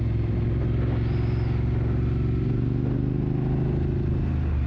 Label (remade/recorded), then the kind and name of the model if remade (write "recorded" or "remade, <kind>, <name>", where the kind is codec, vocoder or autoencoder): recorded